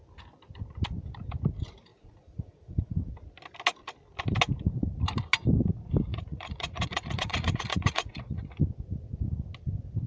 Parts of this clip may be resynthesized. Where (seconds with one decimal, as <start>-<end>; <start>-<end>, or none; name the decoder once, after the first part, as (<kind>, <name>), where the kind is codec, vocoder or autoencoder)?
1.9-3.0 (vocoder, Vocos); 6.1-8.4